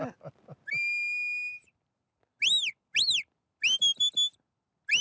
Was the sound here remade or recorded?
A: recorded